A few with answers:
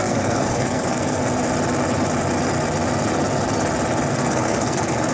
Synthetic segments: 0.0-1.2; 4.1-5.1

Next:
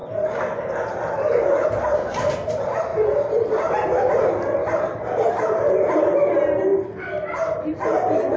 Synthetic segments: none

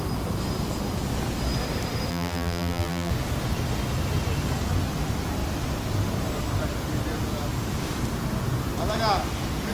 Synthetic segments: 2.1-3.1

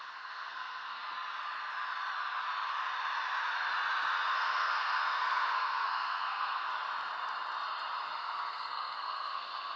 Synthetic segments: 0.0-1.0; 4.3-6.7; 8.2-9.8

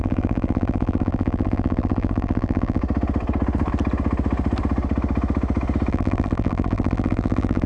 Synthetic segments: 0.0-2.8; 5.9-7.7

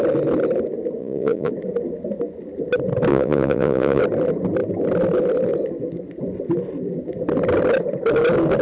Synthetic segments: 1.0-1.5; 3.1-4.0

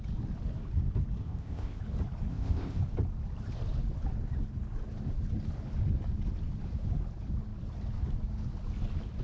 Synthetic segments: 1.2-1.8; 2.3-2.8

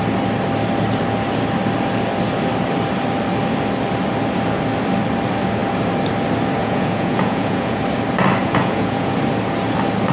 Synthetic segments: 6.6-7.8; 8.4-9.1